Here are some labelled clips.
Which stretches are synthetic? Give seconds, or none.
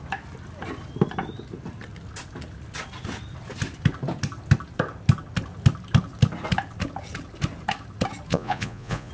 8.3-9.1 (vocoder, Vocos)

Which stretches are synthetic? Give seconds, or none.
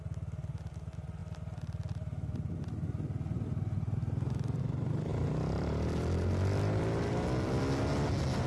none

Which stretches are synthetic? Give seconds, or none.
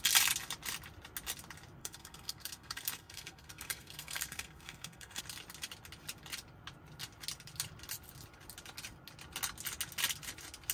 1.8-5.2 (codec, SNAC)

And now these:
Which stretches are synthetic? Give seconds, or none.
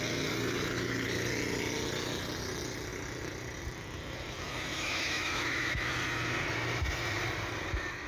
4.7-5.9 (autoencoder, DAC-VAE)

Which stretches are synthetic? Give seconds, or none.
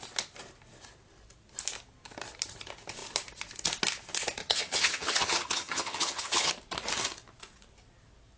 4.4-6.5 (vocoder, HiFi-GAN)